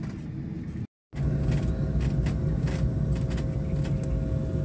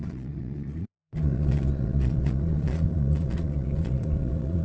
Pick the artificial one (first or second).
second